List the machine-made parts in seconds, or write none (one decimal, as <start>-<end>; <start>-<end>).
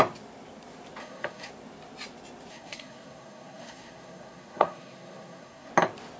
1.0-1.5; 2.5-5.7